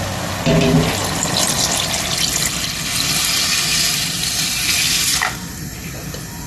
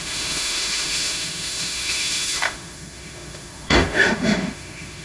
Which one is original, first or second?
first